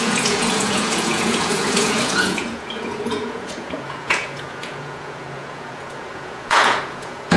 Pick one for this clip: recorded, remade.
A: remade